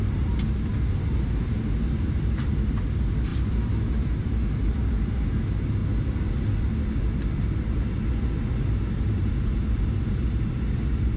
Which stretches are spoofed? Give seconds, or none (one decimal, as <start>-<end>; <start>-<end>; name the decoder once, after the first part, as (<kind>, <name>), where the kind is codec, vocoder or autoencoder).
0.0-5.8 (vocoder, BigVGAN v2); 8.9-11.2